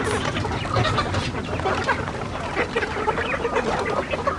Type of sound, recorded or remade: recorded